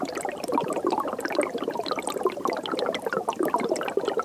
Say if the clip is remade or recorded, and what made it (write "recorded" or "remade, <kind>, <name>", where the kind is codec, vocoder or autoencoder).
recorded